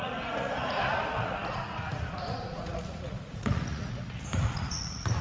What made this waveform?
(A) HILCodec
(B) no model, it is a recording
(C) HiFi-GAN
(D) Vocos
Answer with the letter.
D